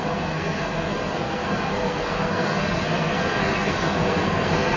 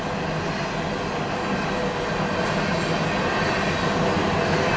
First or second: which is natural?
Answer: second